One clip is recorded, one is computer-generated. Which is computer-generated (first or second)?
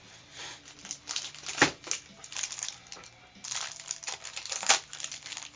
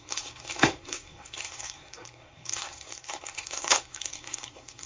second